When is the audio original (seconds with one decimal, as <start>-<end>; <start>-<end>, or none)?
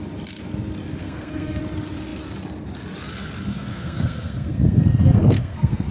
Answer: 0.0-1.0; 1.6-3.5